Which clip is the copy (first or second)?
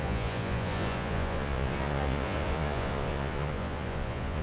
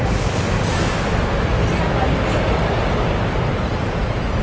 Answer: first